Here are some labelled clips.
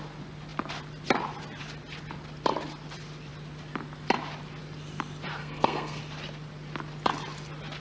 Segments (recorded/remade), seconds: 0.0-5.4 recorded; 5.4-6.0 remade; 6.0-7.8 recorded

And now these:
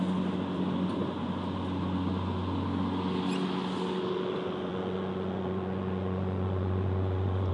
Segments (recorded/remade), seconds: 0.0-4.7 recorded; 4.7-7.5 remade